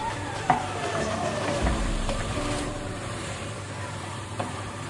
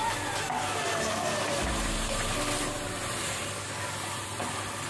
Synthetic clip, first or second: first